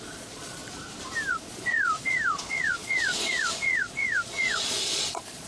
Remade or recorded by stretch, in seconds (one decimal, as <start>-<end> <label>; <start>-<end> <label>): 0.0-0.6 remade; 0.6-1.3 recorded; 1.3-5.5 remade